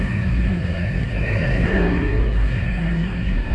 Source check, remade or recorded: remade